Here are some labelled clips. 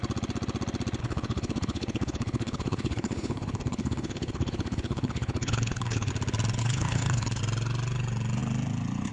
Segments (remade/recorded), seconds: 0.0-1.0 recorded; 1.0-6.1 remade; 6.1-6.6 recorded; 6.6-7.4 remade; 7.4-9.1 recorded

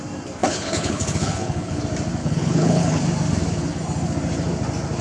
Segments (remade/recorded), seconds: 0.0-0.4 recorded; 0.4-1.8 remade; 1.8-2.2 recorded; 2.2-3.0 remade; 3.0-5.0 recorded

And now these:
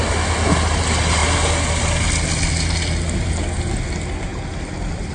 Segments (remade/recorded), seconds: 0.0-5.1 recorded

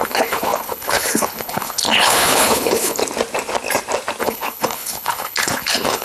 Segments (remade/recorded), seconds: 0.0-3.0 remade; 3.0-4.2 recorded; 4.2-6.0 remade